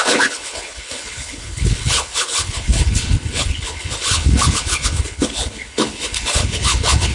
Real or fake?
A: fake